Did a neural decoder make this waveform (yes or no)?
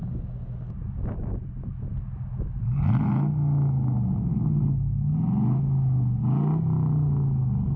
no